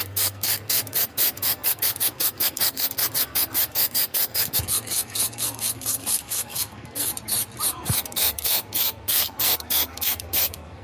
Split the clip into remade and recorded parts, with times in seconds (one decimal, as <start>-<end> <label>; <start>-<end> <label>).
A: 0.0-7.1 remade; 7.1-7.7 recorded; 7.7-10.8 remade